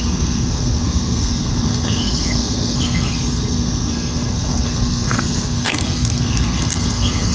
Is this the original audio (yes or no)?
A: no